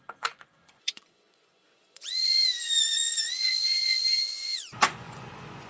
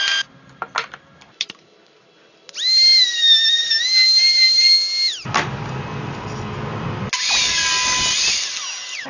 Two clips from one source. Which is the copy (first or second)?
first